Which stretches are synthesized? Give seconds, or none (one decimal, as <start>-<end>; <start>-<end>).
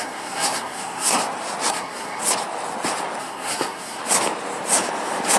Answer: 0.0-1.2; 1.7-2.2; 3.2-4.0